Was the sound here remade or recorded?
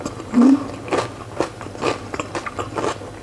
recorded